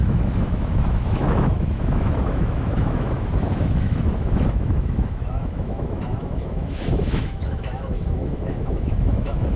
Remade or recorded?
remade